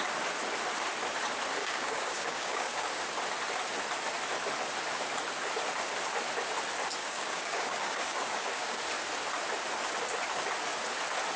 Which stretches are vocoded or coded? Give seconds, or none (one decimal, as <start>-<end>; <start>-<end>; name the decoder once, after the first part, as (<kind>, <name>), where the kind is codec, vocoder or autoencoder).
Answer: 1.6-3.0 (codec, DAC); 7.0-8.8